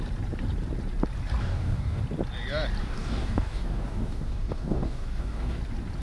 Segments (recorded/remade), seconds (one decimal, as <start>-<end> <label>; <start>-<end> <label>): 0.0-1.4 recorded; 1.4-2.0 remade; 2.0-2.8 recorded; 2.8-5.6 remade; 5.6-6.0 recorded